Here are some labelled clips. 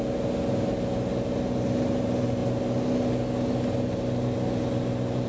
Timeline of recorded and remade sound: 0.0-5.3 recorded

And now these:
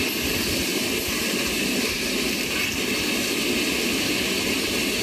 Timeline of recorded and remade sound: 0.0-5.0 recorded

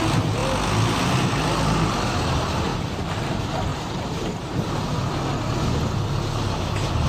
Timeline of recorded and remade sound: 0.0-2.7 recorded; 2.7-3.2 remade; 3.2-3.7 recorded; 3.7-4.3 remade; 4.3-7.1 recorded

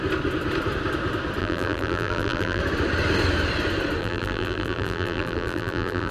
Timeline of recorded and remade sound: 0.0-1.4 recorded; 1.4-2.6 remade; 2.6-4.0 recorded; 4.0-6.1 remade

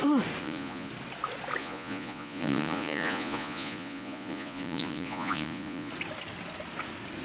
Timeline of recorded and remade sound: 0.0-0.4 recorded; 0.4-0.9 remade; 0.9-1.6 recorded; 1.6-5.9 remade; 5.9-7.2 recorded

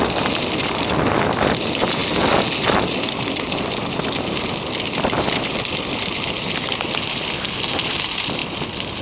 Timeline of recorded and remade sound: 0.0-9.0 recorded

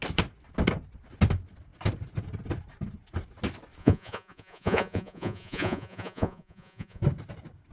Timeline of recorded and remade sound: 0.0-3.8 recorded; 3.8-7.0 remade; 7.0-7.7 recorded